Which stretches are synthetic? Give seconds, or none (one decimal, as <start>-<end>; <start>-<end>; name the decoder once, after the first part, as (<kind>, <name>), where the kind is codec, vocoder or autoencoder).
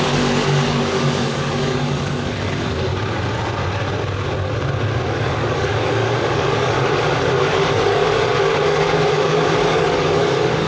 0.0-2.9 (codec, DAC); 5.1-10.7